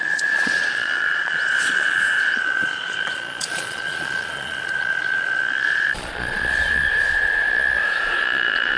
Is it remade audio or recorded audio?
remade